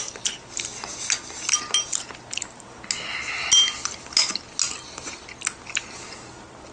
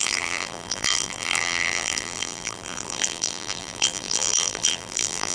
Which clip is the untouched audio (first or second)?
first